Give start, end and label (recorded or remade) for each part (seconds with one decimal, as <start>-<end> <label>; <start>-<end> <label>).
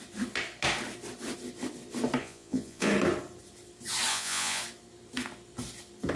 0.0-2.2 recorded; 2.2-2.9 remade; 2.9-4.1 recorded; 4.1-4.6 remade; 4.6-6.2 recorded